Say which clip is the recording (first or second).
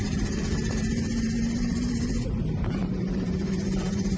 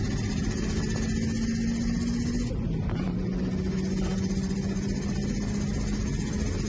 second